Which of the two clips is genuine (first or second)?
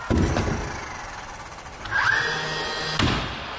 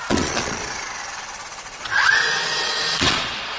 first